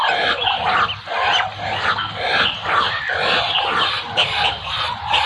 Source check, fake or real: real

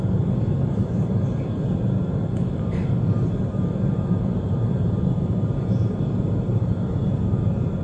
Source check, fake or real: fake